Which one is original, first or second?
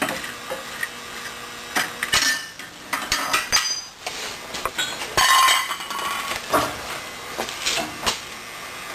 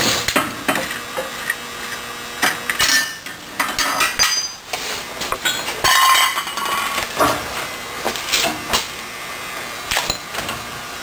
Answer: second